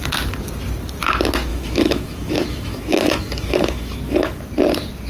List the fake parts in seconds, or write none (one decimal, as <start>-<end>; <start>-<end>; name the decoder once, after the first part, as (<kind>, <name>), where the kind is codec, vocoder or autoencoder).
1.5-4.4 (autoencoder, DAC-VAE)